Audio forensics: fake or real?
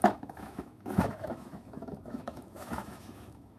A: fake